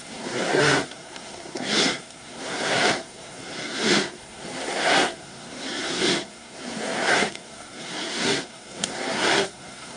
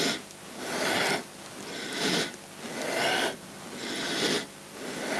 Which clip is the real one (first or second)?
second